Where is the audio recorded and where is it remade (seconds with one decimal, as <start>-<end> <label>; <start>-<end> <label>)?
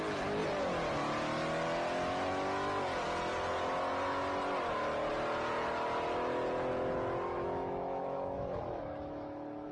0.0-7.3 recorded; 7.3-9.7 remade